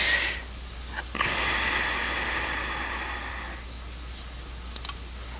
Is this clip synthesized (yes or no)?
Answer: no